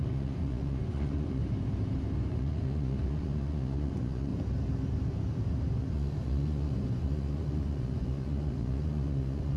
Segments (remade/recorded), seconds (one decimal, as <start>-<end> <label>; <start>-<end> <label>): 0.0-1.4 remade; 1.4-2.3 recorded; 2.3-4.3 remade; 4.3-5.8 recorded; 5.8-9.6 remade